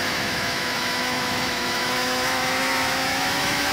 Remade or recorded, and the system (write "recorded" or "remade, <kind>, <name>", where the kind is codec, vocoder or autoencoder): remade, autoencoder, DAC-VAE